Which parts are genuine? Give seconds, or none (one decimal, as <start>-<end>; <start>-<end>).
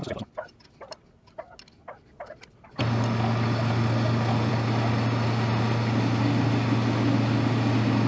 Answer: 0.0-8.1